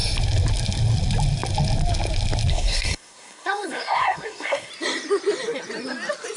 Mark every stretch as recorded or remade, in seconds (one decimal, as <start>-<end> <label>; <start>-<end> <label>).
0.0-2.5 recorded; 2.5-4.7 remade; 4.7-6.4 recorded